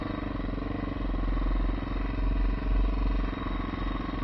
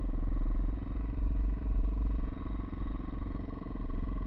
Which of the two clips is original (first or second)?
first